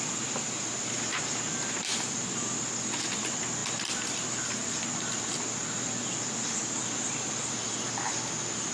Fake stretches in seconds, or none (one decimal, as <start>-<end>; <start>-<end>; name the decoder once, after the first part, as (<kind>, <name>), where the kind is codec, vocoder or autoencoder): none